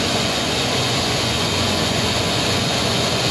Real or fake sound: fake